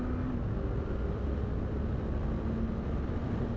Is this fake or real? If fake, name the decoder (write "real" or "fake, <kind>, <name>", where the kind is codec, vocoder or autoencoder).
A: real